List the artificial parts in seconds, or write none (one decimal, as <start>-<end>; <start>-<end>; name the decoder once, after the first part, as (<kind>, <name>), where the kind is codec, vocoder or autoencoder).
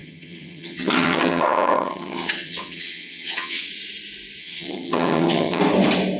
0.0-3.7 (vocoder, HiFi-GAN); 4.4-5.6